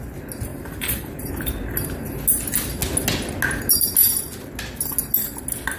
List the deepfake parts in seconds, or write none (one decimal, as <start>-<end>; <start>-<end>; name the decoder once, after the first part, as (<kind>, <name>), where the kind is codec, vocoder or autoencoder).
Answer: 0.5-1.3 (vocoder, BigVGAN v2)